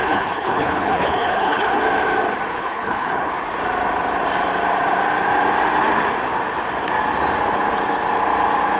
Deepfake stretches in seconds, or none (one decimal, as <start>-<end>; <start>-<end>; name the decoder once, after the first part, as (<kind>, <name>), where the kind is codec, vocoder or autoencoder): 0.0-1.8 (codec, HILCodec); 2.5-3.3